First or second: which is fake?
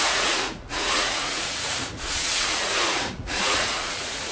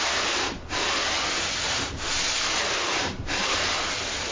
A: first